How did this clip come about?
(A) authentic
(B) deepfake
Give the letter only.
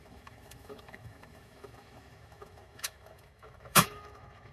B